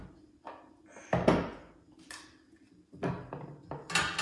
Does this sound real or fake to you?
real